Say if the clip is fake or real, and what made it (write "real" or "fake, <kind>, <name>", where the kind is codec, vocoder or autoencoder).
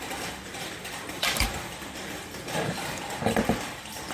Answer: fake, vocoder, BigVGAN v2